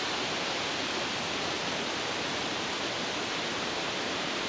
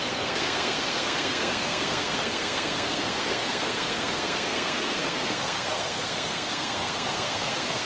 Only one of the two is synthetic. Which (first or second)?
second